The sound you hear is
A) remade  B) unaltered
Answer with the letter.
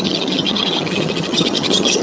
A